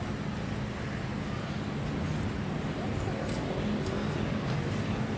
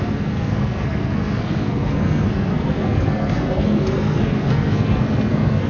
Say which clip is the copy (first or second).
second